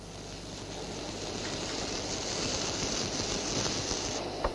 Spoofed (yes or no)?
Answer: no